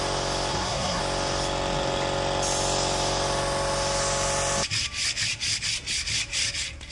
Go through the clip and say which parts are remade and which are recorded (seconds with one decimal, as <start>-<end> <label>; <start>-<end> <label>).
0.0-0.5 recorded; 0.5-1.0 remade; 1.0-6.9 recorded